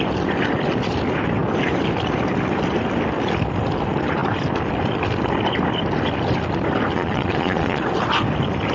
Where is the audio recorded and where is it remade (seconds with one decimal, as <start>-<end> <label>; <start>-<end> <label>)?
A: 0.0-6.9 recorded; 6.9-7.8 remade; 7.8-8.7 recorded